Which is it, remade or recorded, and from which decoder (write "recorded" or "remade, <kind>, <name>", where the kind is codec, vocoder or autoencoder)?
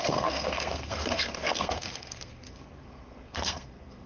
remade, codec, SNAC